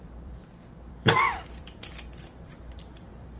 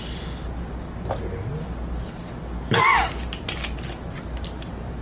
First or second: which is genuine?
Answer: second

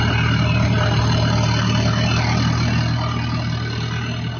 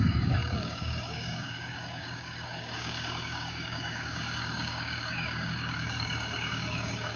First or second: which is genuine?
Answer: first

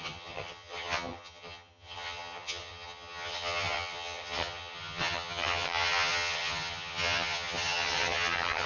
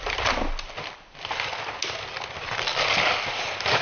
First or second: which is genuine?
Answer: second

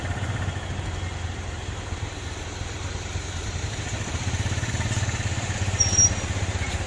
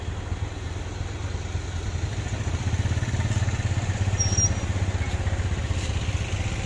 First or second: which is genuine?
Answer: second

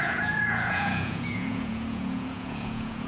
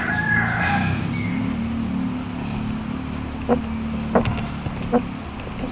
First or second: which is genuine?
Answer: second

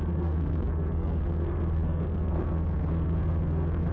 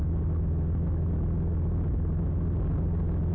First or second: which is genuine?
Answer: second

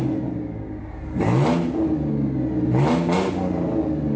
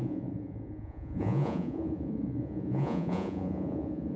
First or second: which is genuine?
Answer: first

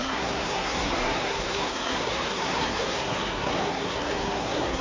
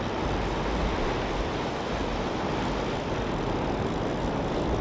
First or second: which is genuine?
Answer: second